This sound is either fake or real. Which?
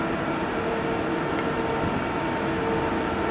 real